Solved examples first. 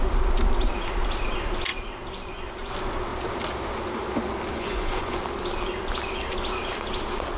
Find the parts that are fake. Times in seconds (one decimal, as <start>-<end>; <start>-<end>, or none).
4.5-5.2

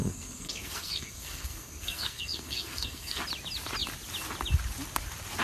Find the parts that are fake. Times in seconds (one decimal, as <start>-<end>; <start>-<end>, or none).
0.0-3.2

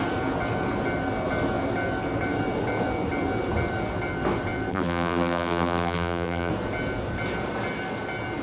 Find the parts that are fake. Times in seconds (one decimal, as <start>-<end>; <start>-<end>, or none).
4.7-6.5